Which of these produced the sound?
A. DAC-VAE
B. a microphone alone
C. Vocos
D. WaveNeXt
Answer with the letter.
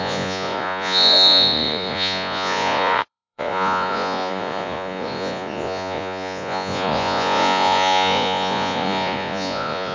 C